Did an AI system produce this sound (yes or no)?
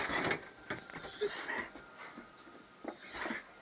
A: no